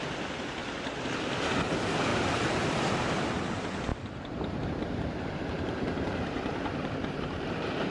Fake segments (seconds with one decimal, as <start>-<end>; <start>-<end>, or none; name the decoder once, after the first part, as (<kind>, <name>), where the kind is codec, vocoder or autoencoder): 2.1-3.3 (vocoder, BigVGAN v2); 3.9-7.9